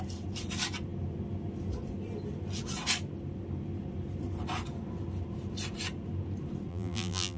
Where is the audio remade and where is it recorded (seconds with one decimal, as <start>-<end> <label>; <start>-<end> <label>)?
0.0-6.7 recorded; 6.7-7.4 remade